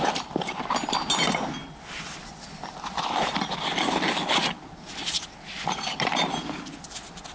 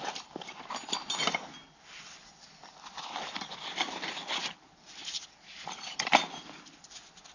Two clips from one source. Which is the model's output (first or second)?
second